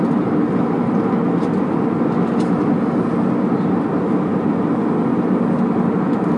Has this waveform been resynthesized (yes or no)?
no